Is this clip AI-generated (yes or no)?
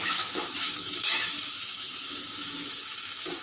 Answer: yes